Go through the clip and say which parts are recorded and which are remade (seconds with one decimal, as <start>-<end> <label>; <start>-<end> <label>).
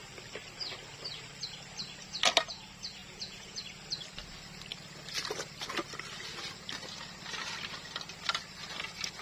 0.0-3.0 recorded; 3.0-3.6 remade; 3.6-9.2 recorded